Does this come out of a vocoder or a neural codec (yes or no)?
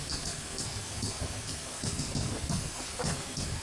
yes